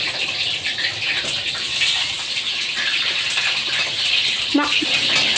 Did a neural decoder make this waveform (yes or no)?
no